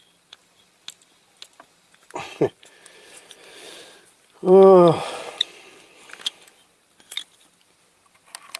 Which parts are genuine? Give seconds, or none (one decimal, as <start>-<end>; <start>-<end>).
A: 0.0-8.6